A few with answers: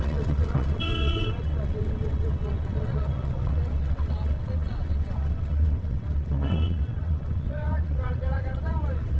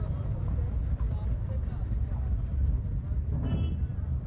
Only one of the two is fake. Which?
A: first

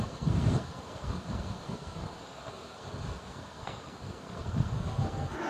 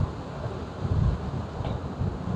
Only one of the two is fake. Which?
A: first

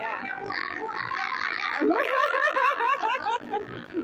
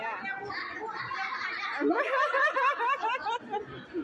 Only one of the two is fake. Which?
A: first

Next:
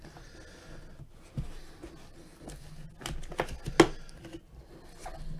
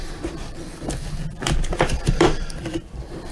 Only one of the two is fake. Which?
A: second